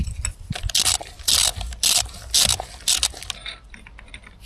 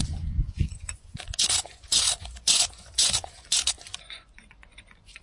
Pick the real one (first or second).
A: first